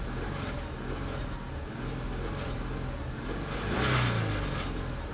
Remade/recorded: recorded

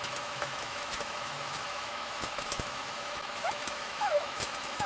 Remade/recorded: remade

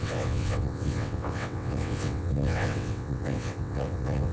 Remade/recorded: remade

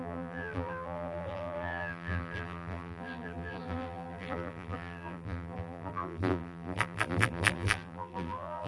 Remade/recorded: remade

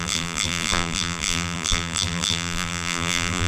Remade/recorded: remade